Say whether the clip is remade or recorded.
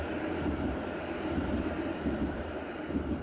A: remade